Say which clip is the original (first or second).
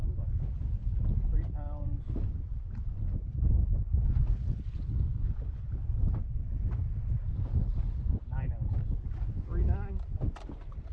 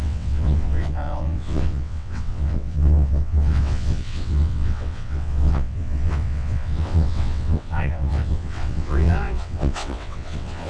first